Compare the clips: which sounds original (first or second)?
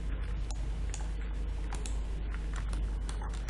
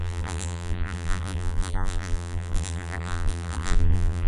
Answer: first